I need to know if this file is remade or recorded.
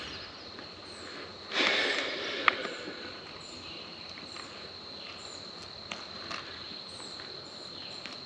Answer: recorded